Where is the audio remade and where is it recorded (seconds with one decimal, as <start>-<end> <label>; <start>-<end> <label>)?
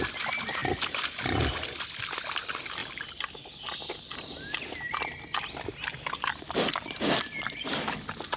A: 0.0-8.4 recorded